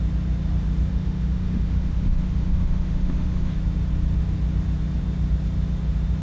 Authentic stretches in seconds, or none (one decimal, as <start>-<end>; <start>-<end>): 0.0-0.9; 3.5-6.2